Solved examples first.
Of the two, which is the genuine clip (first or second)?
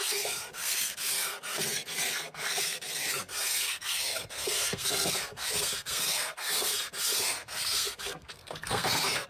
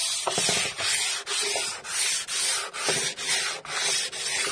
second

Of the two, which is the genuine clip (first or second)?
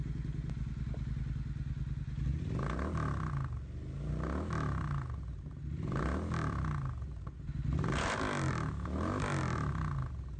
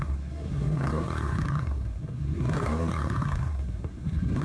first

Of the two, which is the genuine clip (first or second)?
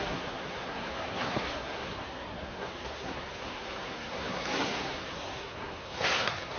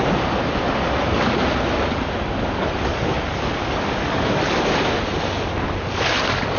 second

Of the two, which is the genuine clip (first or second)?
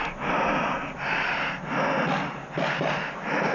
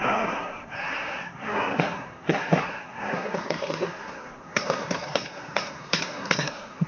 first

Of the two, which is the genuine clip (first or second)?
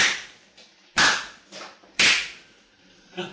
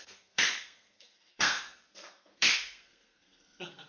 first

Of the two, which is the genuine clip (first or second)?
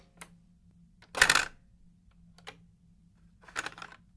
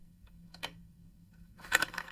first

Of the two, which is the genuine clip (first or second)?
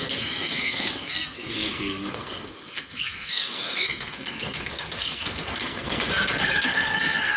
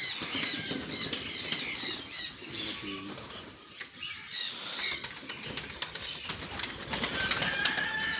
second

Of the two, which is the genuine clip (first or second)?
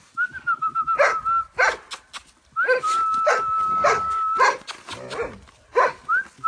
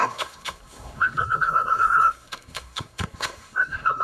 first